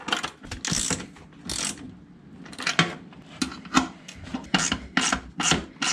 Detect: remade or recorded recorded